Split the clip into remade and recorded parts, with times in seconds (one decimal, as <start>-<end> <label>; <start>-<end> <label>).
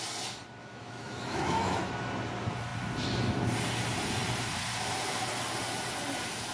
0.0-0.6 recorded; 0.6-1.9 remade; 1.9-6.5 recorded